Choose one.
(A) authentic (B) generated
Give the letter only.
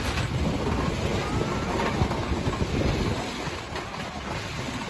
A